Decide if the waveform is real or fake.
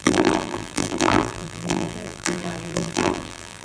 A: fake